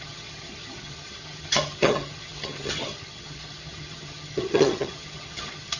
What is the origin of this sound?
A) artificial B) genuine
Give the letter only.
A